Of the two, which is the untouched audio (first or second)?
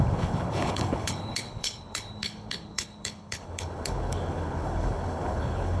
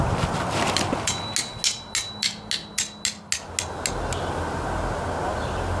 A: second